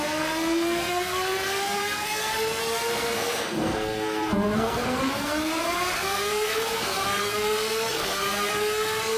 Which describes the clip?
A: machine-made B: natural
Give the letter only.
A